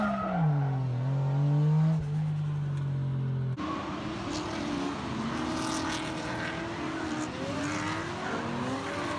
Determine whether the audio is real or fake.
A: real